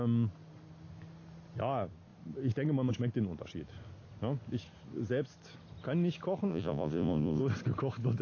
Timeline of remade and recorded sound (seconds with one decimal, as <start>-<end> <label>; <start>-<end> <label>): 0.0-6.5 recorded; 6.5-7.4 remade; 7.4-8.2 recorded